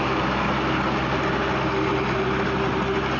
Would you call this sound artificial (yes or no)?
no